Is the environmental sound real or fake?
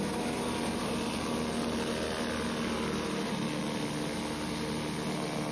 real